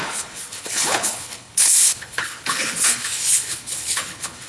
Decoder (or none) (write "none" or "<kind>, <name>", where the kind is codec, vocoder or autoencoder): codec, HILCodec